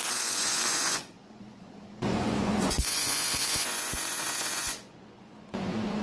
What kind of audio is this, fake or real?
fake